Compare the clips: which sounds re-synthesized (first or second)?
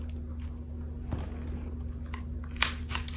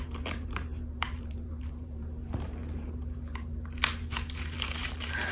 second